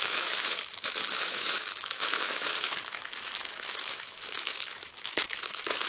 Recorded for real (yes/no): no